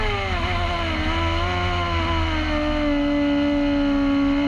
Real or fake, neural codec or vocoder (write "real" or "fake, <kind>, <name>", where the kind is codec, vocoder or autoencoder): real